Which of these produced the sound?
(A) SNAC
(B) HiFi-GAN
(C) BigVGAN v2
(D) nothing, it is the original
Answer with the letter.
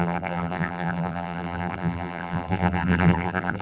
C